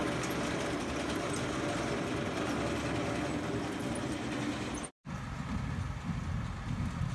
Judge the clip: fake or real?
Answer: real